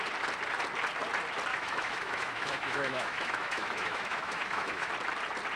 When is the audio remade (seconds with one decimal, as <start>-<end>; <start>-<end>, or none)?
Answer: 1.5-4.9